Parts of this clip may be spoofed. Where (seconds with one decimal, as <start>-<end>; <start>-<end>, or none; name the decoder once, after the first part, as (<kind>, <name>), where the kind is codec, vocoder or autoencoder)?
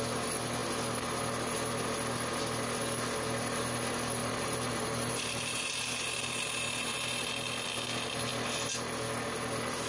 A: 4.2-7.3 (vocoder, BigVGAN v2)